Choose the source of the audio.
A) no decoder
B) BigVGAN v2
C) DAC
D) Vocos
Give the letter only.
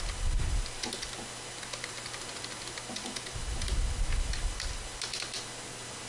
A